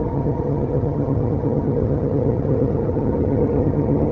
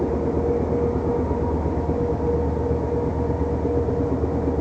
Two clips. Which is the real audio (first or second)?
second